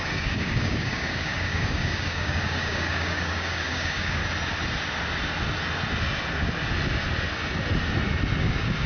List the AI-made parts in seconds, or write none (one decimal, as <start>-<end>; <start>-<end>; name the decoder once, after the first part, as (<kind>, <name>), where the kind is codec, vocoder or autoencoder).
0.0-4.2 (codec, DAC); 8.4-8.9